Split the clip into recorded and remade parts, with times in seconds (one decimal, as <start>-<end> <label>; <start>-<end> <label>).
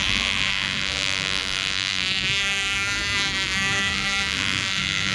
0.0-5.1 remade